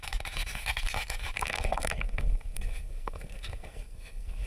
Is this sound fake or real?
fake